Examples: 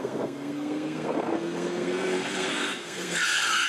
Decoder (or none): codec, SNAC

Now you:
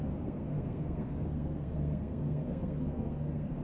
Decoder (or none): codec, SNAC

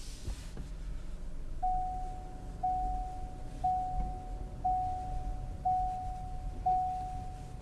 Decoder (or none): none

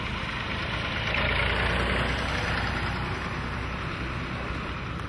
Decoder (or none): none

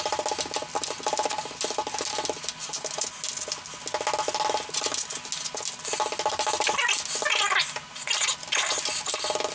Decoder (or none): none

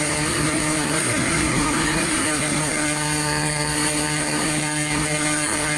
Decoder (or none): codec, SNAC